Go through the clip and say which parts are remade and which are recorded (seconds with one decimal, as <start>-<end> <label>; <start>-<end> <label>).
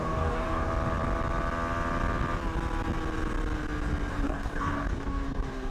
0.0-0.7 remade; 0.7-4.1 recorded; 4.1-5.7 remade